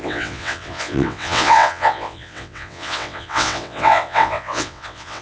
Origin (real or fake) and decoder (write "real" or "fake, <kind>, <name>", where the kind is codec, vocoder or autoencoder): fake, vocoder, WaveNeXt